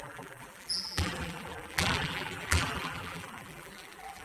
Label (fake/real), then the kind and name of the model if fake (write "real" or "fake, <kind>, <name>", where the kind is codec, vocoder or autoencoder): fake, vocoder, BigVGAN v2